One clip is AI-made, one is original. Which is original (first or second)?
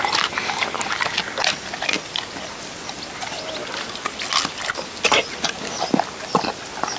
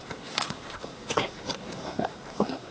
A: first